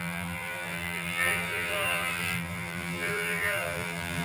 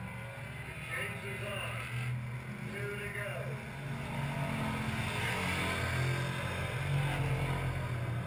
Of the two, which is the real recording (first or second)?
second